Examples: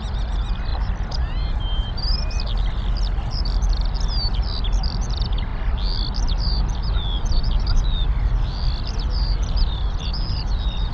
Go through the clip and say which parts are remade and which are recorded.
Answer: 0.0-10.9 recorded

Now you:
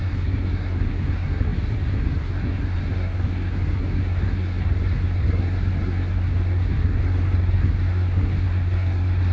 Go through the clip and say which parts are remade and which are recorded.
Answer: 0.0-9.3 remade

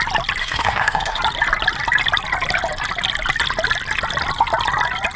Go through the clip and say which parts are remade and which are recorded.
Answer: 0.0-0.4 recorded; 0.4-1.2 remade; 1.2-5.2 recorded

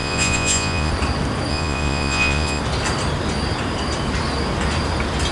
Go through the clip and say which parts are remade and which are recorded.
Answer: 0.0-0.9 remade; 0.9-1.5 recorded; 1.5-2.6 remade; 2.6-5.3 recorded

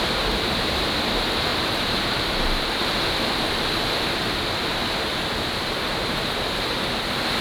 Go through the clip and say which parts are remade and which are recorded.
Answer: 0.0-1.5 recorded; 1.5-2.8 remade; 2.8-5.1 recorded; 5.1-7.0 remade; 7.0-7.4 recorded